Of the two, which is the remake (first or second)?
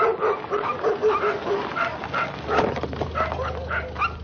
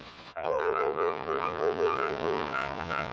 second